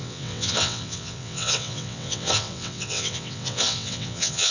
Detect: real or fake fake